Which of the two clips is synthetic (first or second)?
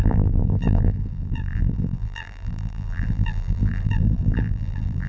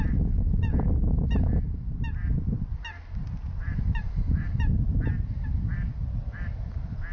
first